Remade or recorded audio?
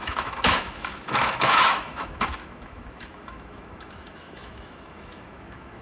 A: remade